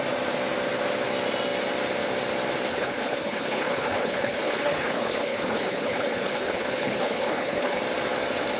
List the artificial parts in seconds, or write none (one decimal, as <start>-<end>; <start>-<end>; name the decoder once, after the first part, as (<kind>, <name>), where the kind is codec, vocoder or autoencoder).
2.7-7.8 (codec, HILCodec)